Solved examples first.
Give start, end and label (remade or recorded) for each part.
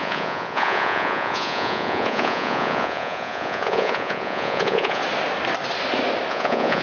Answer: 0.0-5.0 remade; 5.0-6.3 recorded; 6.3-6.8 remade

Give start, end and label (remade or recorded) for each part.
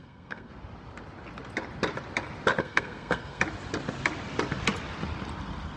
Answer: 0.0-0.5 remade; 0.5-2.6 recorded; 2.6-3.4 remade; 3.4-5.8 recorded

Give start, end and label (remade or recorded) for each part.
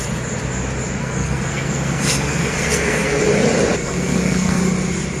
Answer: 0.0-1.0 recorded; 1.0-3.2 remade; 3.2-3.8 recorded; 3.8-4.6 remade; 4.6-5.2 recorded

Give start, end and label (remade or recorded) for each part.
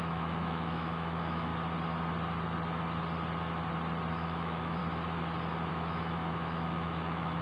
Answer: 0.0-1.5 remade; 1.5-4.1 recorded; 4.1-4.8 remade; 4.8-5.7 recorded; 5.7-7.4 remade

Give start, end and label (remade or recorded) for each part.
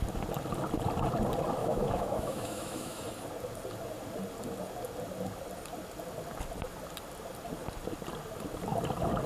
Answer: 0.0-1.6 recorded; 1.6-3.0 remade; 3.0-9.3 recorded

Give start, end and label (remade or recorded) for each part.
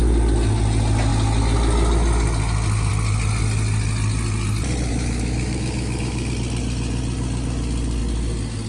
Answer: 0.0-4.9 recorded; 4.9-6.3 remade; 6.3-8.7 recorded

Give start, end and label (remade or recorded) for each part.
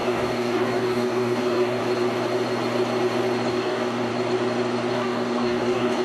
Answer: 0.0-1.8 remade; 1.8-3.5 recorded; 3.5-4.1 remade; 4.1-4.9 recorded; 4.9-6.0 remade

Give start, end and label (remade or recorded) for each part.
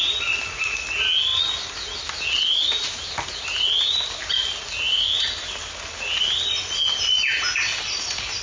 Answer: 0.0-8.4 recorded